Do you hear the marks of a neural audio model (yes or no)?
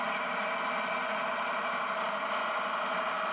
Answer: no